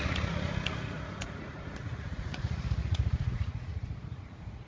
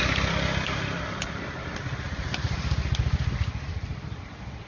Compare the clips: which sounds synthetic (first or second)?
first